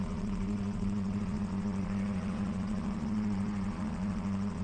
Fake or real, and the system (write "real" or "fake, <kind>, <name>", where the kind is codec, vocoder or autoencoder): fake, vocoder, Vocos